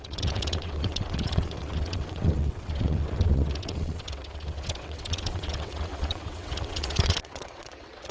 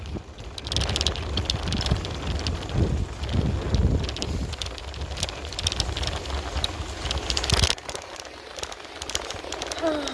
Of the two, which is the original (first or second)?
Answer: second